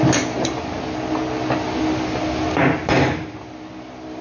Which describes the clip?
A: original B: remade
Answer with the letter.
A